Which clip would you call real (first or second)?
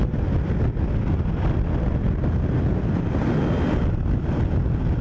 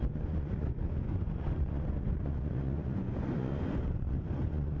first